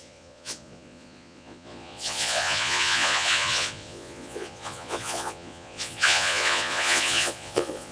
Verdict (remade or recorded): remade